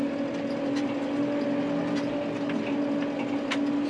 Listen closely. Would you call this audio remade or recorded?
recorded